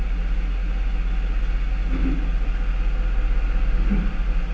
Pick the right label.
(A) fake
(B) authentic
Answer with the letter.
B